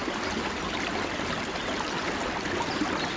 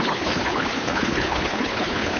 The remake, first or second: second